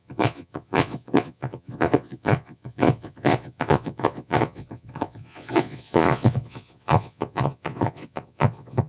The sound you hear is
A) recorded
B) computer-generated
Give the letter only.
B